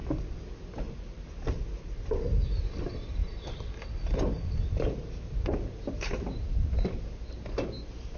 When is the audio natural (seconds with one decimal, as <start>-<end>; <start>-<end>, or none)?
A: 0.0-8.2